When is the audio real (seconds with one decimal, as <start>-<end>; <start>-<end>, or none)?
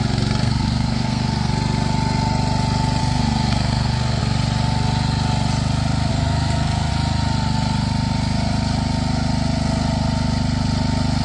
0.0-0.4; 1.5-3.0; 4.2-6.1; 6.9-11.2